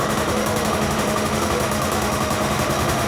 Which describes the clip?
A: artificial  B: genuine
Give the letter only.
A